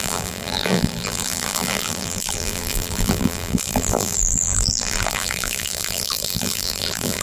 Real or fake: fake